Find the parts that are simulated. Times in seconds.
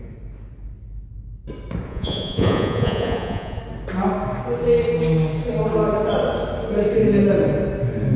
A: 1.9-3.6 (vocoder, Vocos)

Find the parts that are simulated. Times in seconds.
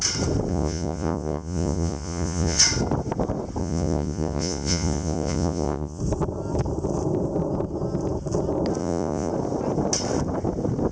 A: 0.5-2.6 (vocoder, Vocos); 3.6-6.0; 8.8-9.3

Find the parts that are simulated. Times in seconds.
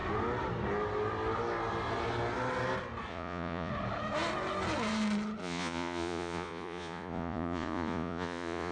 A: 3.1-3.7 (vocoder, Vocos); 5.4-8.7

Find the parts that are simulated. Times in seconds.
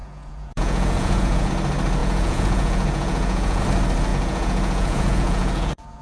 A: 0.0-1.5 (vocoder, Vocos); 2.0-3.6; 4.1-6.0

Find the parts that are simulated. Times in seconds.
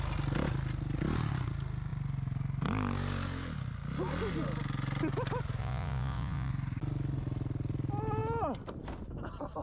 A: 5.6-6.5 (vocoder, Vocos)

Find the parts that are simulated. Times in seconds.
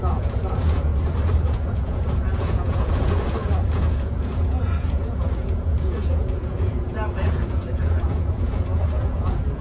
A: 0.0-0.9 (vocoder, Vocos); 1.4-9.6